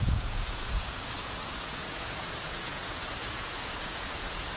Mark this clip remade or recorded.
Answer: remade